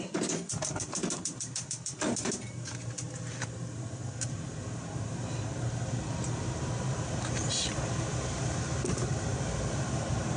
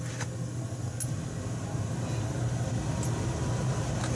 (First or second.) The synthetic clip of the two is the first